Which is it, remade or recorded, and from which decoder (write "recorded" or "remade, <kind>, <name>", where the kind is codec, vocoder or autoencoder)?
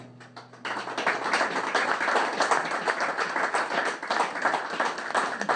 recorded